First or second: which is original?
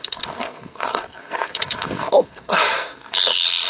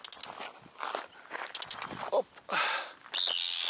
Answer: second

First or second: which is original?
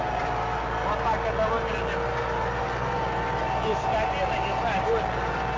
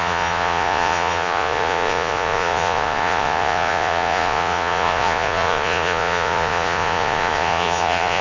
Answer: first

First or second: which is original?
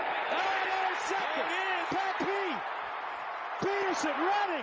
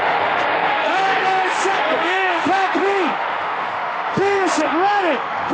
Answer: first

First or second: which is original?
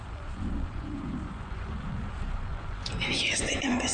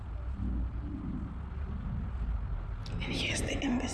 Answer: second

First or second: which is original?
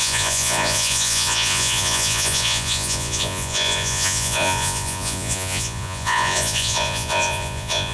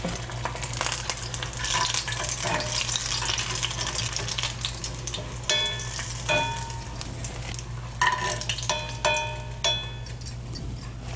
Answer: second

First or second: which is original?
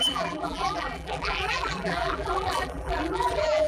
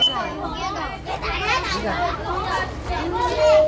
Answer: second